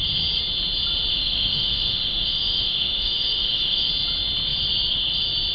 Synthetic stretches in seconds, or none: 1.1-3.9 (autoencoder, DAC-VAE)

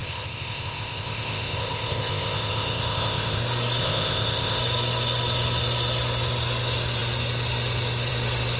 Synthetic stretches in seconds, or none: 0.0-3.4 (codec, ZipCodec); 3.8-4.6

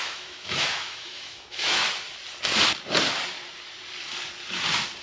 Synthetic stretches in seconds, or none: 0.0-1.8 (autoencoder, DAC-VAE)

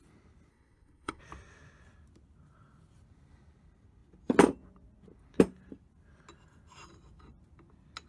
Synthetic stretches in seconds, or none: 0.5-1.2 (codec, SNAC)

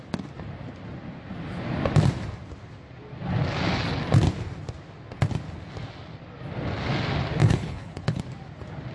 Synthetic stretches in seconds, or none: 7.4-8.2 (codec, HILCodec)